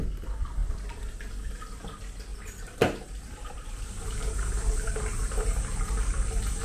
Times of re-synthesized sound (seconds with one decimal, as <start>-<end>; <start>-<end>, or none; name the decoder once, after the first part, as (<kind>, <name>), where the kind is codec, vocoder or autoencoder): 2.3-6.6 (vocoder, BigVGAN v2)